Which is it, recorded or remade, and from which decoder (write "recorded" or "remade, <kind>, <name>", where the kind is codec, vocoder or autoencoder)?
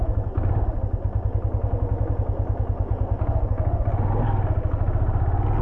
recorded